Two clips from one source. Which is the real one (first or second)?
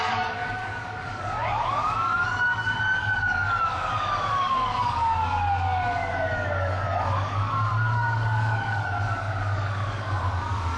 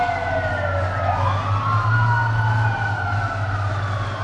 second